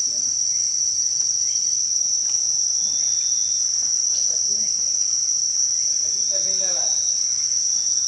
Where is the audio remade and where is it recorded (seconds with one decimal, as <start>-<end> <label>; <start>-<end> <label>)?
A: 0.0-2.2 remade; 2.2-3.7 recorded; 3.7-5.0 remade; 5.0-8.1 recorded